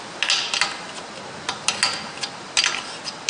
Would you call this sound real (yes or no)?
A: yes